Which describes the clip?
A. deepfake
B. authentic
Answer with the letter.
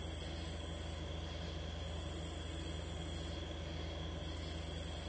B